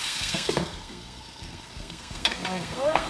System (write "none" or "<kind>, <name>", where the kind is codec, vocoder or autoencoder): codec, SNAC